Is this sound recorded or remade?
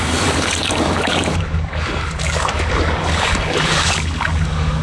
remade